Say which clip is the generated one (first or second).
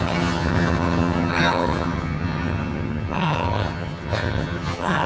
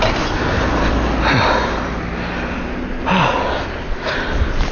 first